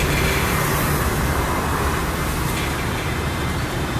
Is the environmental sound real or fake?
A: real